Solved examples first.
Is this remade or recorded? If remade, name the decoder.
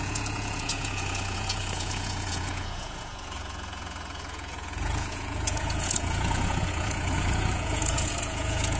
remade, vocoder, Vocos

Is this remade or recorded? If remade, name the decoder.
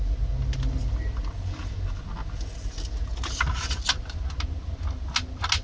recorded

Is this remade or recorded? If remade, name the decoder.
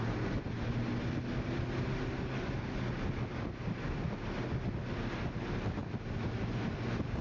recorded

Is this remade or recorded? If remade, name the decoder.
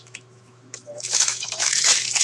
remade, autoencoder, DAC-VAE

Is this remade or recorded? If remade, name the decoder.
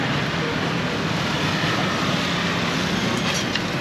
recorded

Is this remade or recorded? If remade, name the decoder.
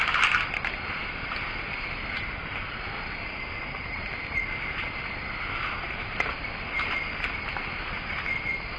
recorded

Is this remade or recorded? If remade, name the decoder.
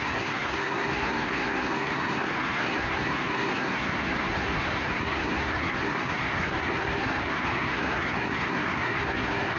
remade, codec, SNAC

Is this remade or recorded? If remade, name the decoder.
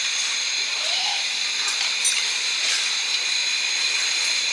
remade, vocoder, BigVGAN v2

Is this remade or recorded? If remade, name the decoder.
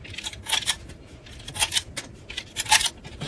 recorded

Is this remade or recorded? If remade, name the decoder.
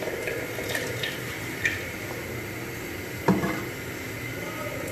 recorded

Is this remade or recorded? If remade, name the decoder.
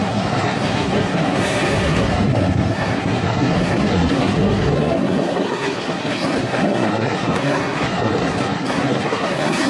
remade, codec, SNAC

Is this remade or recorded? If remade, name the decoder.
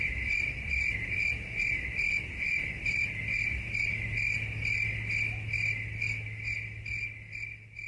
recorded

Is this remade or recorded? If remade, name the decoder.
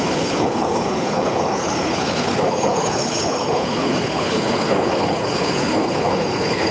remade, codec, HILCodec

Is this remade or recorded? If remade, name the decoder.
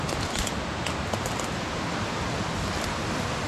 recorded